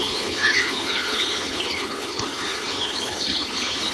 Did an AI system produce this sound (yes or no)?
yes